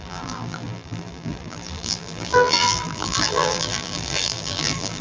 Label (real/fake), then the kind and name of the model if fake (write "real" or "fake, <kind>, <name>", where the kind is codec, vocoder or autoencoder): fake, vocoder, BigVGAN v2